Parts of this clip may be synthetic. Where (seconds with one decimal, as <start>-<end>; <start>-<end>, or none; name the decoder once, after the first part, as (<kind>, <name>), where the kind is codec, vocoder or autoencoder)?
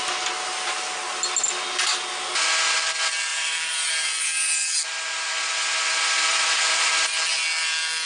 3.3-3.9 (vocoder, BigVGAN v2); 6.3-6.9